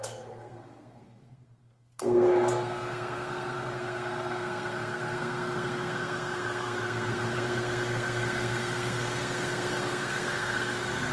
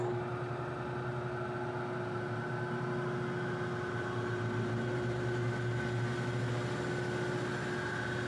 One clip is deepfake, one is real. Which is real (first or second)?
second